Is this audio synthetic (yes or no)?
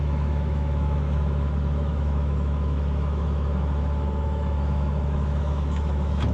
yes